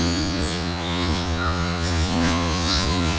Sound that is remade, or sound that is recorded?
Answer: remade